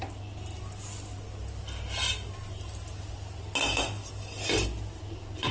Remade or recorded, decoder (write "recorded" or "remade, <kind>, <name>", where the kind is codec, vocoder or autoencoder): recorded